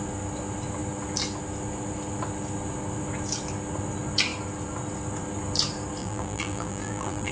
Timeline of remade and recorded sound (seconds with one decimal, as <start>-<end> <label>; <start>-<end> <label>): 0.0-6.0 recorded; 6.0-7.3 remade